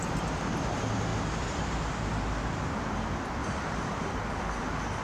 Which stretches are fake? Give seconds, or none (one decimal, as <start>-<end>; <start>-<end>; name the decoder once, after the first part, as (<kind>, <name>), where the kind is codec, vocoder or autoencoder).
1.1-2.2 (vocoder, BigVGAN v2); 3.4-4.1